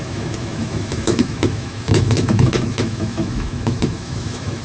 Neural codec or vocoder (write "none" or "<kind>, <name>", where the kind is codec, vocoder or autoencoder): autoencoder, DAC-VAE